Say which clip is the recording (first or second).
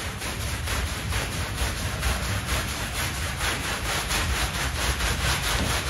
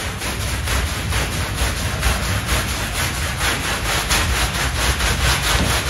second